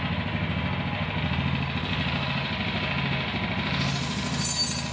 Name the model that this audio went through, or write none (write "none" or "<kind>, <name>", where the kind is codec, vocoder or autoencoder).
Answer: none